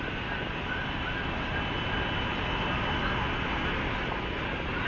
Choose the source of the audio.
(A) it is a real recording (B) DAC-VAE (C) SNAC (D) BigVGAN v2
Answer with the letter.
A